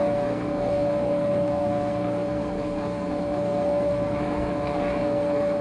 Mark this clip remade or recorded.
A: remade